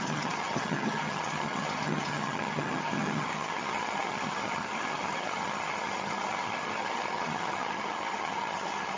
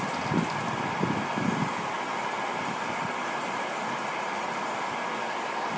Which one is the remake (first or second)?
first